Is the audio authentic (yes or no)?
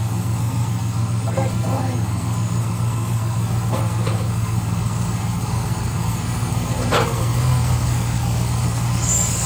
no